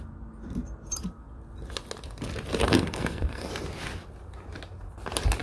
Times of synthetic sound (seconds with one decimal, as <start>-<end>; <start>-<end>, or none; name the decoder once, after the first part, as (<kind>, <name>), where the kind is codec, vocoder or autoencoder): 2.6-3.5 (codec, SNAC)